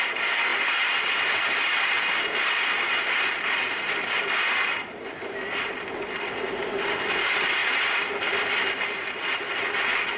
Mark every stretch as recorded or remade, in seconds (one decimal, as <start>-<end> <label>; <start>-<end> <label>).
0.0-0.5 recorded; 0.5-3.9 remade; 3.9-10.2 recorded